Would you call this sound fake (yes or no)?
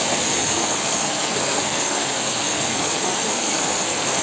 yes